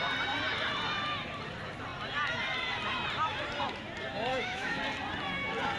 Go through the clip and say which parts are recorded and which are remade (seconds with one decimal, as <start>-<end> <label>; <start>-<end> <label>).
0.0-4.3 recorded; 4.3-4.8 remade; 4.8-5.8 recorded